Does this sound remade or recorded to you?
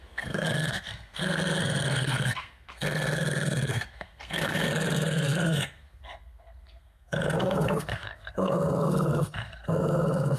remade